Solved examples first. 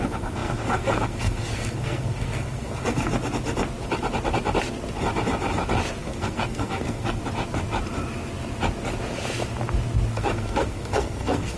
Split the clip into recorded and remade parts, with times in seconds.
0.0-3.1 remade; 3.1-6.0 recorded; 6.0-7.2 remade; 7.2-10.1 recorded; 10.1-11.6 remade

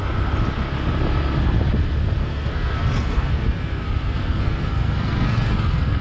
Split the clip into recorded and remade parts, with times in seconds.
0.0-2.2 recorded; 2.2-6.0 remade